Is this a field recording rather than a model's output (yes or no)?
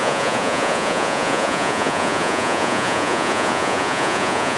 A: no